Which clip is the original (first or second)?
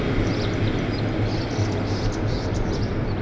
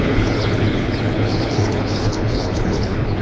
first